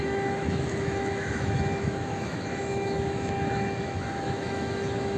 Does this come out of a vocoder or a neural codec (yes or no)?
yes